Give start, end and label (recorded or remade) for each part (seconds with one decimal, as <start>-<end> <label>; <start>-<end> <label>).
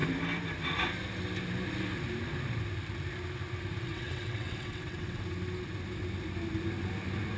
0.0-3.9 recorded; 3.9-5.2 remade; 5.2-7.4 recorded